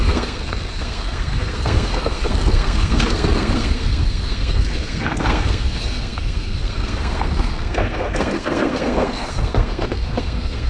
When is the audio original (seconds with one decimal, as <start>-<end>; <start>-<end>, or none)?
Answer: none